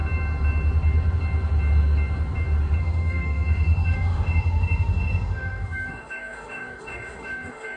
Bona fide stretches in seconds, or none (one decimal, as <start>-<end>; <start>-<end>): 0.0-2.8